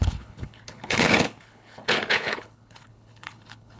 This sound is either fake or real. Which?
fake